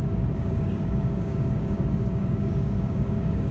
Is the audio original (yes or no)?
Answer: no